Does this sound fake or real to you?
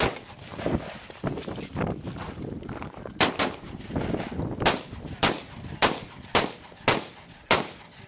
real